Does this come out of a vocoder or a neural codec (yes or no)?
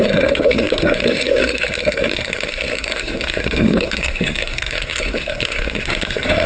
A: yes